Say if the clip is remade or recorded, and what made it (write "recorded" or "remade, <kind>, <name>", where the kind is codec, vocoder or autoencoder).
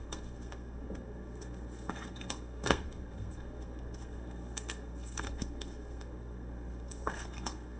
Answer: remade, codec, SNAC